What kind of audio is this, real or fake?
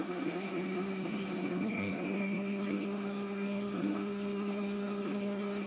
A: fake